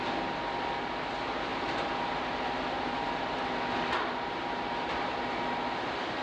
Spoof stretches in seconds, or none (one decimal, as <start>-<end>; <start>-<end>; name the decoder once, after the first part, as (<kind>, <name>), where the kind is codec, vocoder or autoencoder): none

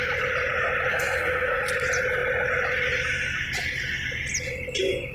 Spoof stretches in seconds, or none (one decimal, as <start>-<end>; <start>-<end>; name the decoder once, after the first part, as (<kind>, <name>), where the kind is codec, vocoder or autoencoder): 0.9-1.6 (codec, SNAC)

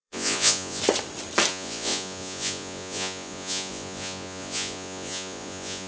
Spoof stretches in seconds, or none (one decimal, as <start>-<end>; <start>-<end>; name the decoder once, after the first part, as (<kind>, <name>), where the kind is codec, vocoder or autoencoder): 0.0-0.8 (vocoder, Vocos); 1.5-5.9

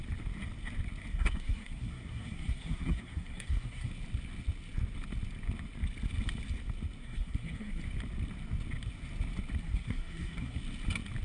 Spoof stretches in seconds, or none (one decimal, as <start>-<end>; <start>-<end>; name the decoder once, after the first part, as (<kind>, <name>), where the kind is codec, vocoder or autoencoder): 1.1-3.9 (codec, SNAC); 7.0-7.8; 9.6-10.6

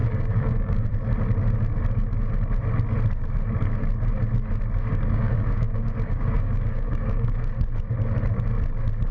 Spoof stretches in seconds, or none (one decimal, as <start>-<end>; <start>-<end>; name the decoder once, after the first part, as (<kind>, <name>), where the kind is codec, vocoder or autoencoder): 0.0-0.9 (codec, DAC); 4.9-7.5

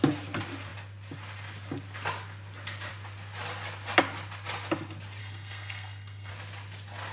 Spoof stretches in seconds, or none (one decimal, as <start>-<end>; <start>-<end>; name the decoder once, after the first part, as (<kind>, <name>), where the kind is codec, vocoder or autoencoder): 5.2-6.3 (codec, SNAC)